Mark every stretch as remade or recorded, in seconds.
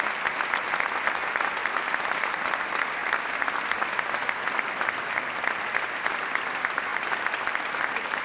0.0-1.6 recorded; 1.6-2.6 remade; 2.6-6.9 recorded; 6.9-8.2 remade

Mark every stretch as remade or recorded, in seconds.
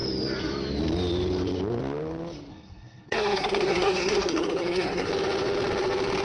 0.0-2.5 recorded; 2.5-5.1 remade; 5.1-6.2 recorded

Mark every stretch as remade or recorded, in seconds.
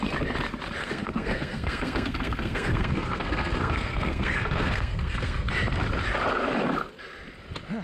0.0-0.8 recorded; 0.8-5.5 remade; 5.5-7.8 recorded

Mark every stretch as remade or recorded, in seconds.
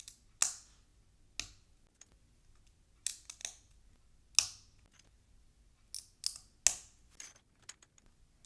0.0-8.5 recorded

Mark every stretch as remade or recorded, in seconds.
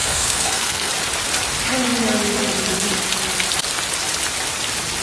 0.0-0.9 remade; 0.9-5.0 recorded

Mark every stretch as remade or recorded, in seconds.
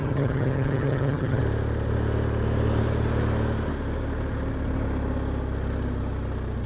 0.0-1.4 remade; 1.4-6.7 recorded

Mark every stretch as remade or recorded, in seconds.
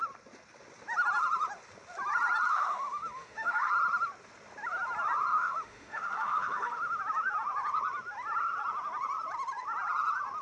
0.0-2.5 recorded; 2.5-3.7 remade; 3.7-5.3 recorded; 5.3-7.0 remade; 7.0-10.4 recorded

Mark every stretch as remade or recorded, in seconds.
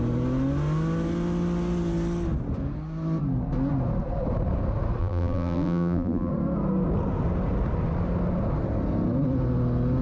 0.0-5.0 recorded; 5.0-6.3 remade; 6.3-10.0 recorded